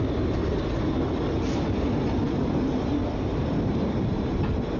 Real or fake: real